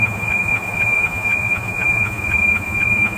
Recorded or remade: remade